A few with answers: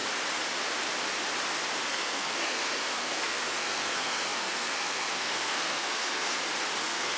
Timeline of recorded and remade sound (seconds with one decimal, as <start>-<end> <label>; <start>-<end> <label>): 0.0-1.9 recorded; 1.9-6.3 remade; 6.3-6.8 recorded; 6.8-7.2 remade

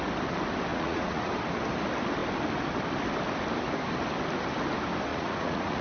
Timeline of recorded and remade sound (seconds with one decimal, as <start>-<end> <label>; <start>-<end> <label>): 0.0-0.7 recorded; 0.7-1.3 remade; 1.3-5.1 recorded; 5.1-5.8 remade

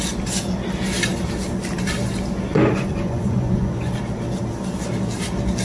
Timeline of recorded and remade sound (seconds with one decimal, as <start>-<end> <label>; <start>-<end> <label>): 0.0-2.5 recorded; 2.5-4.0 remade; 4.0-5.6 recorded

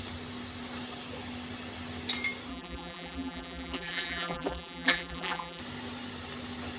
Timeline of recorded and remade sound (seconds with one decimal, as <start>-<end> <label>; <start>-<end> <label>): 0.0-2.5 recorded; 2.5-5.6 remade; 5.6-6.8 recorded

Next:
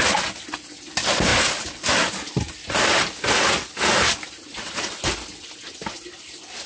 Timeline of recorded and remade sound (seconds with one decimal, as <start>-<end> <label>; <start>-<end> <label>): 0.0-6.7 recorded

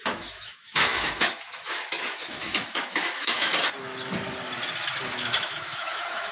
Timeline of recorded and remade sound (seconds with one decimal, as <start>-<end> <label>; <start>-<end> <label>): 0.0-3.5 remade; 3.5-5.1 recorded; 5.1-6.3 remade

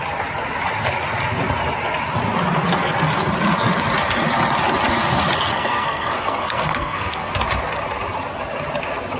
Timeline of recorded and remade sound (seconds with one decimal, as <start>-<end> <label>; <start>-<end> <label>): 0.0-5.5 recorded; 5.5-7.3 remade; 7.3-9.2 recorded